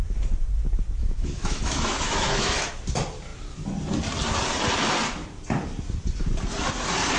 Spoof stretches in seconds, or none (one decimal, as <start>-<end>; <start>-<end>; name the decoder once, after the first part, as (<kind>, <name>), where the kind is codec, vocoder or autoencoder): 1.0-2.7 (autoencoder, DAC-VAE)